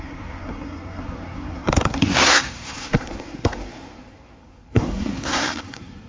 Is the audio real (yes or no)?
no